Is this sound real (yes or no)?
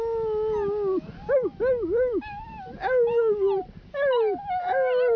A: yes